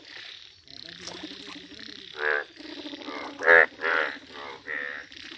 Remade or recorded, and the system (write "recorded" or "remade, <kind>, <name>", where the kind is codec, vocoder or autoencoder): remade, vocoder, BigVGAN v2